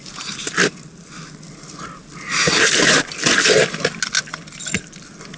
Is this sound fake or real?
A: real